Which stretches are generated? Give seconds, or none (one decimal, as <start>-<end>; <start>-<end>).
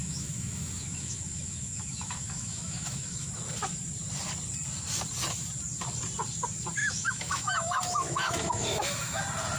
0.0-3.3; 6.8-9.2